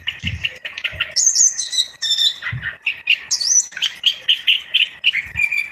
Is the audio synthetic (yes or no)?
no